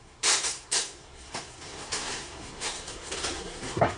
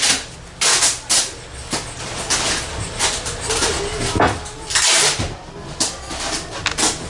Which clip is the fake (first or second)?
first